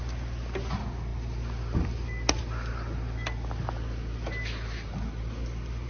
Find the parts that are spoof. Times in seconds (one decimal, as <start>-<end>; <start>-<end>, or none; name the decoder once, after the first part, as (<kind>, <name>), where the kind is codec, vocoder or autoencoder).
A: none